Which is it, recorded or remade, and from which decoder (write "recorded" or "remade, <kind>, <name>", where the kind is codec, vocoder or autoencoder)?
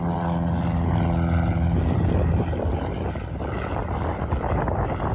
recorded